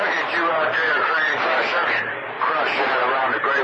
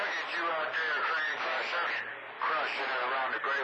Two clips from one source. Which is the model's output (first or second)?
first